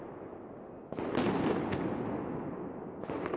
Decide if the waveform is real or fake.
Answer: real